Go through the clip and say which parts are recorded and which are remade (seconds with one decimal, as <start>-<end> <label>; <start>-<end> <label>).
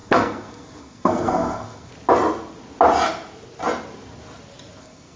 0.0-1.9 remade; 1.9-4.8 recorded; 4.8-5.2 remade